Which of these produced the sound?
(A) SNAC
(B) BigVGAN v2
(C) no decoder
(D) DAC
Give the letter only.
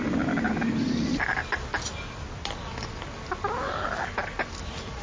C